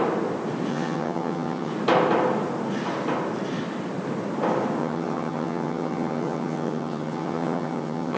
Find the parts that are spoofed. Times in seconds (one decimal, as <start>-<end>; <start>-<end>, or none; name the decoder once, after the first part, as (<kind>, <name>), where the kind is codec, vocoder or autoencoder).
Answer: 0.7-1.7 (vocoder, HiFi-GAN); 4.8-8.2